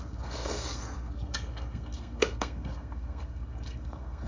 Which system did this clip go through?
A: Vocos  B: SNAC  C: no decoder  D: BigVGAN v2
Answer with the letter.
B